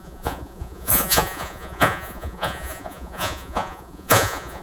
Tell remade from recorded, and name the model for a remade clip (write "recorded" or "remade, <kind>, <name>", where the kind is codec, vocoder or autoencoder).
remade, vocoder, Vocos